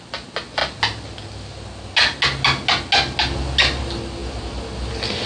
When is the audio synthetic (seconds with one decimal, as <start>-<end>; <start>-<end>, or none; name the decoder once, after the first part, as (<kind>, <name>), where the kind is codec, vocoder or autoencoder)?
none